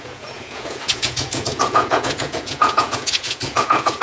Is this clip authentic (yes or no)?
no